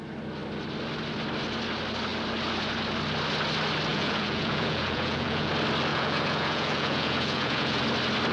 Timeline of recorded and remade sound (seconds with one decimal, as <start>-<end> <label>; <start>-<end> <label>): 0.0-3.9 recorded; 3.9-5.5 remade; 5.5-5.9 recorded; 5.9-7.8 remade; 7.8-8.3 recorded